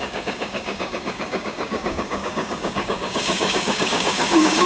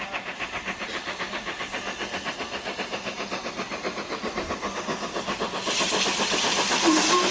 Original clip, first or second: second